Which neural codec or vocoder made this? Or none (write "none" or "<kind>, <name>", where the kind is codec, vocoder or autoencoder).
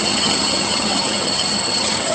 vocoder, HiFi-GAN